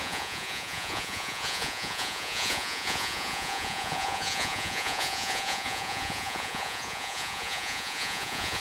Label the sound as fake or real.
fake